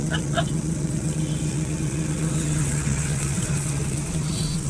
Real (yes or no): no